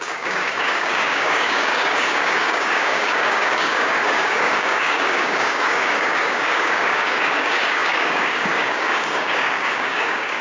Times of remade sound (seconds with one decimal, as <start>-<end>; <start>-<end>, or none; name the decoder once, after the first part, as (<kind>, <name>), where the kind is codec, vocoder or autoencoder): 0.0-10.4 (codec, DAC)